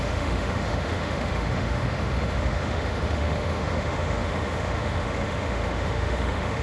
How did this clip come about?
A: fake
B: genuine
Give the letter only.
A